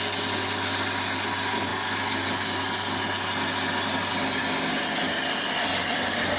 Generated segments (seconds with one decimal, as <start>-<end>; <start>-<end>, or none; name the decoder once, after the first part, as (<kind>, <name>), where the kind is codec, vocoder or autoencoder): none